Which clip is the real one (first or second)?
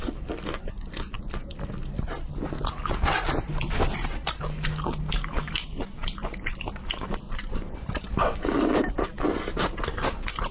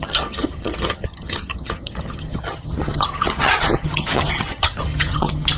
first